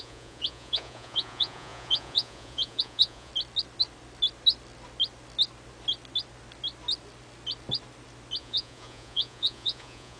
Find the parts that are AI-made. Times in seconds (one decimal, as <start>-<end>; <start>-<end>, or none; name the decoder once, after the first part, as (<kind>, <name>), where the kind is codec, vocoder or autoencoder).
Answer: 0.0-3.3 (vocoder, Vocos); 8.4-10.2